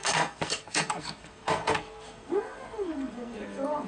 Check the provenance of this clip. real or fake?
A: fake